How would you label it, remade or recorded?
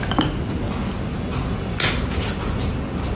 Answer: recorded